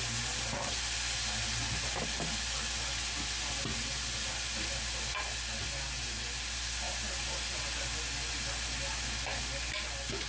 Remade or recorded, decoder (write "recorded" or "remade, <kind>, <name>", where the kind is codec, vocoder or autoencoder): recorded